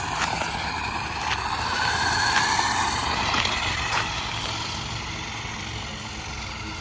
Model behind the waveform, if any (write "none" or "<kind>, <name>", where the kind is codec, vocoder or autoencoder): none